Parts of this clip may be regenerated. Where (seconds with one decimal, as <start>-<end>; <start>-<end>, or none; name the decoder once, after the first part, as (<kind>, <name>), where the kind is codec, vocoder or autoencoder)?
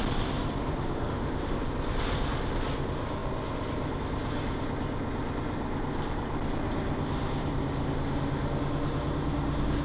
0.6-1.6 (autoencoder, DAC-VAE)